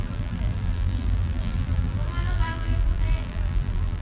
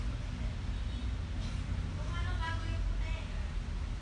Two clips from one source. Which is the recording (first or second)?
second